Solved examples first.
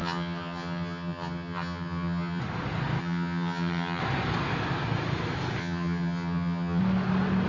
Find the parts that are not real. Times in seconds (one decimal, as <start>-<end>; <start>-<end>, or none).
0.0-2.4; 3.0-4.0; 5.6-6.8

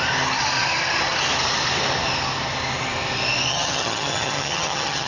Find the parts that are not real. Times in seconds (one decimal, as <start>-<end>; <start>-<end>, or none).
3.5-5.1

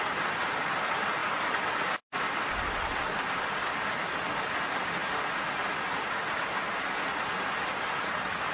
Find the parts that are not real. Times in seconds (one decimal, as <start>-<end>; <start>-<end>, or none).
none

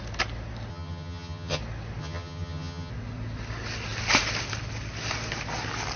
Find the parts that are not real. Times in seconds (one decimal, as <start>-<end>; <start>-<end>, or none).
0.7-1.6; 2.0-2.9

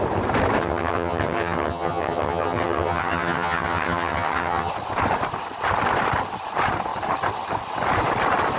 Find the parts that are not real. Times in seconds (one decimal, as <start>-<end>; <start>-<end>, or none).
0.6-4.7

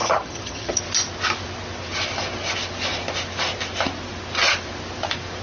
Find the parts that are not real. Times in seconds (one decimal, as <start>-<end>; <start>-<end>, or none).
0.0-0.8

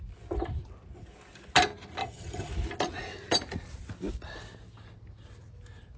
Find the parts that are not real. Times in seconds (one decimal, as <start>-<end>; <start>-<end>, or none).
2.0-2.5

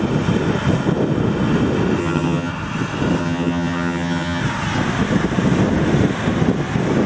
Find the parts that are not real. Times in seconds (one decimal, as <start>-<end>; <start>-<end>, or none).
2.0-2.5; 3.2-4.4